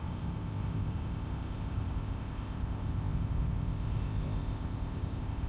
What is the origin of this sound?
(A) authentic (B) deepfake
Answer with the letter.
B